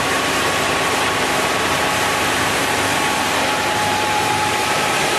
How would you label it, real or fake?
fake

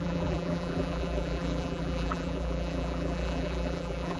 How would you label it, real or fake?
fake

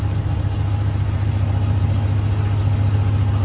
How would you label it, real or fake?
real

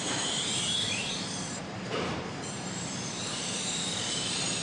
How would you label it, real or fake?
fake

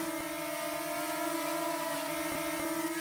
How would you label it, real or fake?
real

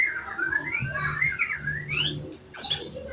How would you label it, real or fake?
real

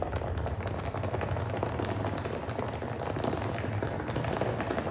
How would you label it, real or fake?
fake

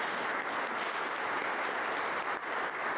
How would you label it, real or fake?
real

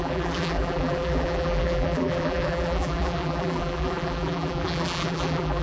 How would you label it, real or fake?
fake